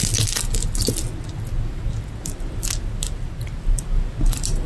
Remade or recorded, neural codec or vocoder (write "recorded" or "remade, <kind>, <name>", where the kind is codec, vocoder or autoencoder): recorded